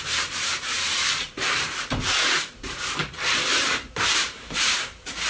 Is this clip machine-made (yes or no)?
yes